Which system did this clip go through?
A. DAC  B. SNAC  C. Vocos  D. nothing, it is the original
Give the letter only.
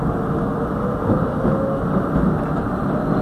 D